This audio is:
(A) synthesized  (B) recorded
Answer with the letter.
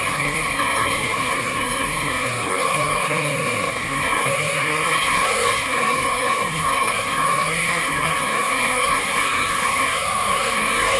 A